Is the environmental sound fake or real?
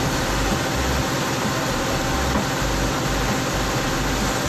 real